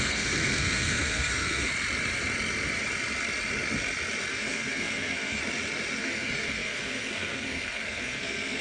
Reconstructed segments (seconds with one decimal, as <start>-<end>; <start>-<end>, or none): 0.0-1.7; 4.3-5.4; 6.0-8.6